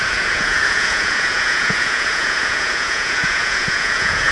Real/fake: fake